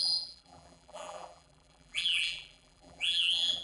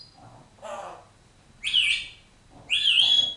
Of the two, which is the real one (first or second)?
second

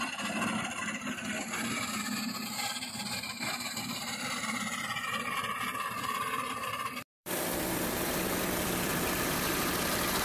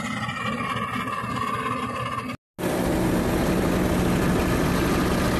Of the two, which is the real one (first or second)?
second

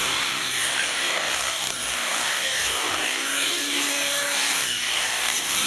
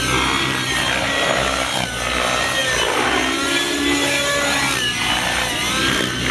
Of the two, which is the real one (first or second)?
second